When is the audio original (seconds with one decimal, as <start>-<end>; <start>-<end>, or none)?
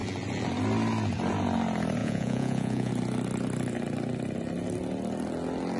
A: 0.0-2.0; 2.9-5.8